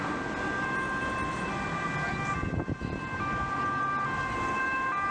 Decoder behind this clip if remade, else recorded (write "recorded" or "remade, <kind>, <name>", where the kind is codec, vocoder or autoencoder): recorded